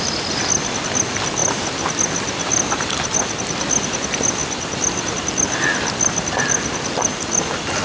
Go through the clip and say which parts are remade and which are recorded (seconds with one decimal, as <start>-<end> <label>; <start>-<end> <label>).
0.0-7.8 recorded